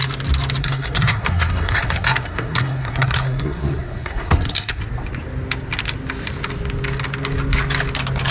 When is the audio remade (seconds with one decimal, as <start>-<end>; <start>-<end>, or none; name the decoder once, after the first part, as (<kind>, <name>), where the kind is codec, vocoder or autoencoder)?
0.6-4.8 (codec, SNAC)